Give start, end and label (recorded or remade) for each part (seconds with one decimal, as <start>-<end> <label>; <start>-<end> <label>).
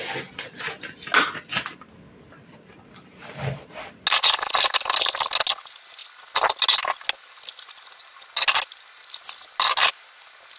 0.0-10.6 recorded